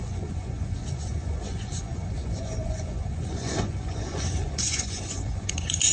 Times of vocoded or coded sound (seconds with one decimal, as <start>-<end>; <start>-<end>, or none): 0.0-5.9